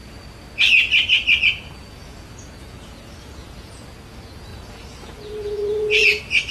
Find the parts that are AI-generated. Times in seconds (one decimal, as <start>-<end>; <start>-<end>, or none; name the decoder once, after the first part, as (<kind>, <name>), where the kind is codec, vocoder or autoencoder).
1.4-6.5 (vocoder, Vocos)